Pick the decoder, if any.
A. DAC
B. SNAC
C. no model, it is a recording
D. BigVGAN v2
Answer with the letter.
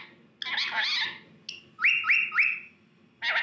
C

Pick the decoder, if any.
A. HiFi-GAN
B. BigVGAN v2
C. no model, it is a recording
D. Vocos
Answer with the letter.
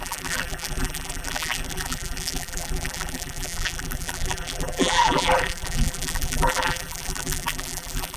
B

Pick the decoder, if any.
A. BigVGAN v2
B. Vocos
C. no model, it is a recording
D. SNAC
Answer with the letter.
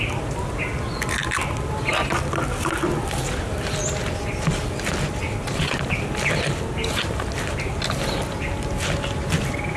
C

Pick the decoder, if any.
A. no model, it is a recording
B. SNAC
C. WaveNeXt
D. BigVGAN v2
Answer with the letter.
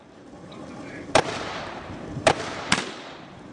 D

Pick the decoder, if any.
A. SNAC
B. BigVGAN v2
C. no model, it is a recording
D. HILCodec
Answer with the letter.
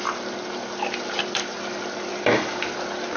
B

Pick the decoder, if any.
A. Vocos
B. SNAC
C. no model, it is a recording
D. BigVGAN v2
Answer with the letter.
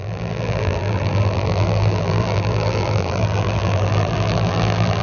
D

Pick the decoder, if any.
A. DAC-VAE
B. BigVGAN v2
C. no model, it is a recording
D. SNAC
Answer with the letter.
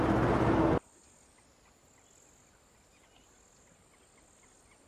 C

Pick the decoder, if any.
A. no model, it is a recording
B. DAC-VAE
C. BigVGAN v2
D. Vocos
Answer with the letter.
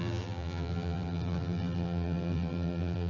C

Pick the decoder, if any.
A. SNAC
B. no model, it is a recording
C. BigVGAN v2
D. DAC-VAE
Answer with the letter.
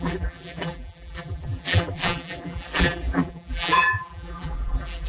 C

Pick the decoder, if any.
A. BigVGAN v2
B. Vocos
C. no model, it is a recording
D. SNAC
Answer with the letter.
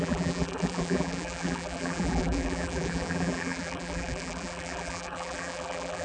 A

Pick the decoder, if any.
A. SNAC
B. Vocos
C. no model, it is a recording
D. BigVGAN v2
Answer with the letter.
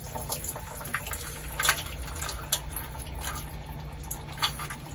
C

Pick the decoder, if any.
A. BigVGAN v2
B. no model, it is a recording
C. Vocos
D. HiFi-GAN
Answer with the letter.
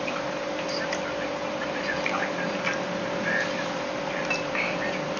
A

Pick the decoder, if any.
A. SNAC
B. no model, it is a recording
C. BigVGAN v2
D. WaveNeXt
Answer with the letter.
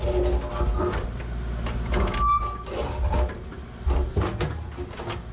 B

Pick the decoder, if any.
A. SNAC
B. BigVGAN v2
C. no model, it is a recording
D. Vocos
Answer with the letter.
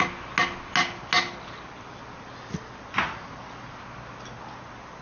C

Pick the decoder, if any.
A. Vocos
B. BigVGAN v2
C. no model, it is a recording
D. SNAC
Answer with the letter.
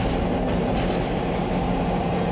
C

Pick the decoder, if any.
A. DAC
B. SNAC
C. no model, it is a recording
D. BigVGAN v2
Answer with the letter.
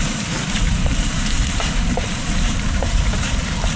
D